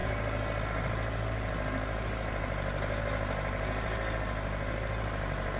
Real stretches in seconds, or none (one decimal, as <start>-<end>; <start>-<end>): 0.0-5.6